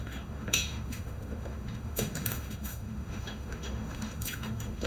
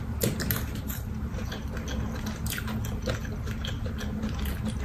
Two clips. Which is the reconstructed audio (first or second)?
first